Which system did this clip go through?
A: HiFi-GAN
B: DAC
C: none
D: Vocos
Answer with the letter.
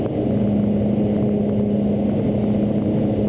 C